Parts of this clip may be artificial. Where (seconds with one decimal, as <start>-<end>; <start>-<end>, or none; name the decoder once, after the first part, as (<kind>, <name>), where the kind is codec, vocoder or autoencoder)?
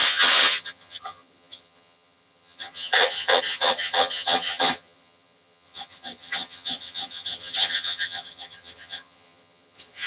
0.0-10.1 (vocoder, HiFi-GAN)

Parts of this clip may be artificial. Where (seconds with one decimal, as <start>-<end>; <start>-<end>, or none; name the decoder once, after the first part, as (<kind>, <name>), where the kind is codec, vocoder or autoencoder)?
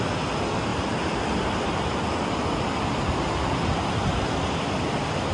none